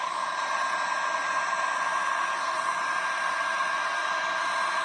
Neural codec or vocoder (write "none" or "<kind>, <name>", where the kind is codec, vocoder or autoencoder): none